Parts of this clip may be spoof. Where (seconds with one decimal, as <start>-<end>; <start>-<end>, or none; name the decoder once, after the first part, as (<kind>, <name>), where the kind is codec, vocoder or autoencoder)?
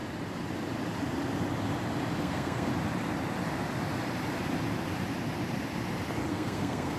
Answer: 2.2-2.7 (codec, SNAC); 6.3-7.0